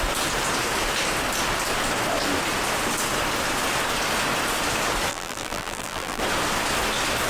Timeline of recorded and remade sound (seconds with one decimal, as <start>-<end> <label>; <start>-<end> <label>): 0.0-5.1 recorded; 5.1-6.2 remade; 6.2-7.3 recorded